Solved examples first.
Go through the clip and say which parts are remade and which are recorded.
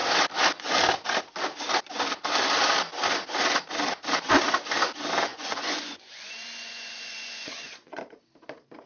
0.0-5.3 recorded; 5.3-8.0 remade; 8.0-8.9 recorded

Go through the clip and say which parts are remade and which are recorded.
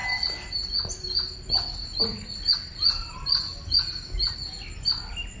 0.0-5.4 recorded